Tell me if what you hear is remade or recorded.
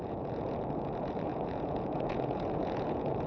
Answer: remade